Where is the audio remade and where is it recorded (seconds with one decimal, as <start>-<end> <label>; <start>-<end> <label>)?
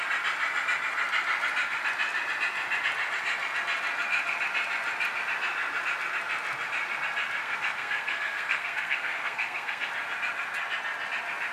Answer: 0.0-7.4 recorded; 7.4-9.9 remade; 9.9-11.5 recorded